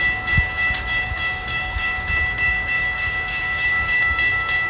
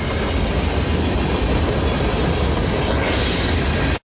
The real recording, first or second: second